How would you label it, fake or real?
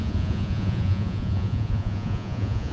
fake